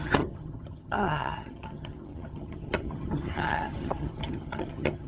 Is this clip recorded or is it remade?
remade